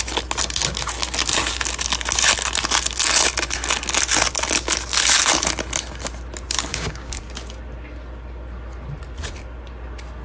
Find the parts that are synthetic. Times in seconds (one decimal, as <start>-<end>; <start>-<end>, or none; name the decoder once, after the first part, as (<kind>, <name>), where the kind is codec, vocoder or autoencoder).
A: 6.7-7.2 (codec, DAC)